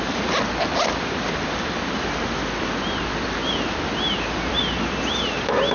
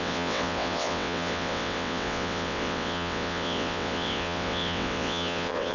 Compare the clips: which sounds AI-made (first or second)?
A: second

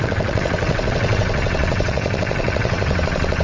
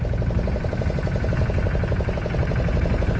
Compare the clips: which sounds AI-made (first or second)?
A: first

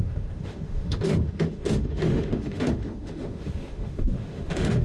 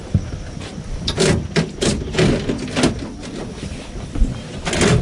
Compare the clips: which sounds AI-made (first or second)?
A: first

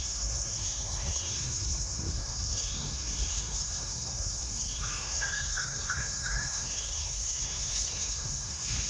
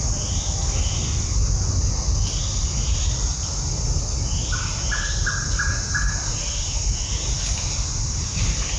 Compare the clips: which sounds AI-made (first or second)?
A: first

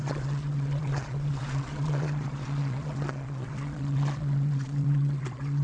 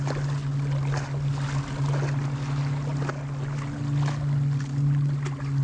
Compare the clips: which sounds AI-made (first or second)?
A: first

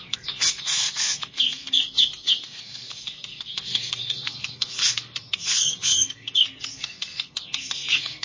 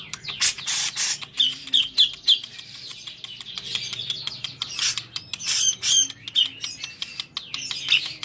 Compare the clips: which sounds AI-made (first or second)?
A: first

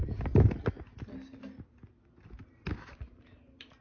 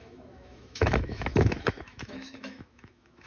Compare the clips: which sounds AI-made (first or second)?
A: second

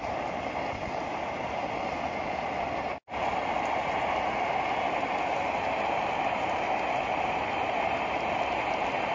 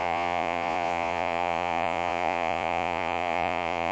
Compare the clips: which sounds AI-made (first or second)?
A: second